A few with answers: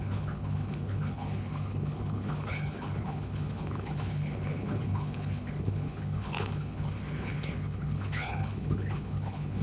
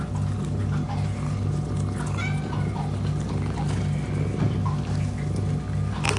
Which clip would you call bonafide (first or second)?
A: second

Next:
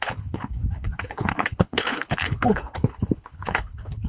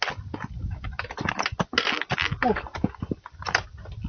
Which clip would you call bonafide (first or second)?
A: second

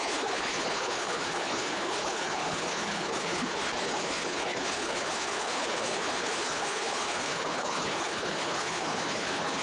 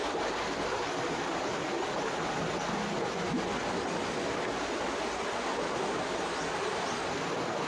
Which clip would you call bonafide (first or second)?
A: second